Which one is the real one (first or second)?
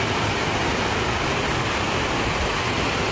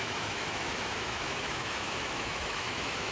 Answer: first